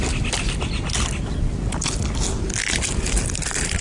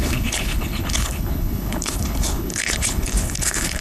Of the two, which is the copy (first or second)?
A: second